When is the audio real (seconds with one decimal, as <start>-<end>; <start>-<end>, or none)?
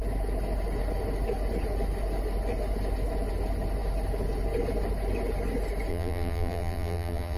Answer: 0.0-5.9